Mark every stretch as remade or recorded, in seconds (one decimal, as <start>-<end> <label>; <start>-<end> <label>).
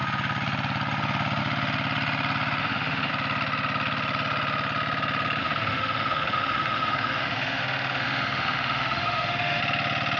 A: 0.0-2.6 recorded; 2.6-3.1 remade; 3.1-5.4 recorded; 5.4-9.6 remade; 9.6-10.2 recorded